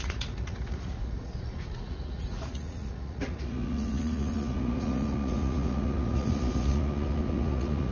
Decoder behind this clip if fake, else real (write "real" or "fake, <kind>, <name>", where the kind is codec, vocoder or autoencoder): fake, vocoder, Vocos